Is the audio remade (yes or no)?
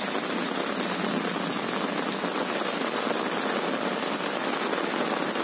no